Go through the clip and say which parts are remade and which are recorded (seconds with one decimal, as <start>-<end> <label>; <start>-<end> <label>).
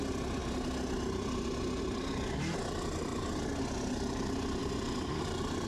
0.0-0.4 remade; 0.4-1.8 recorded; 1.8-3.1 remade; 3.1-3.6 recorded; 3.6-5.7 remade